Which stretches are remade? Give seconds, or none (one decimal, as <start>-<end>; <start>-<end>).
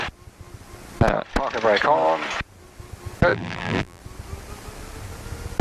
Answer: 3.3-4.0